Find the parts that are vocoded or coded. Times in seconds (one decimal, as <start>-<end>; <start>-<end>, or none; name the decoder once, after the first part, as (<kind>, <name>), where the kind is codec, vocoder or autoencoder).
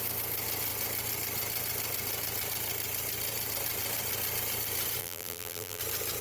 5.0-5.8 (vocoder, BigVGAN v2)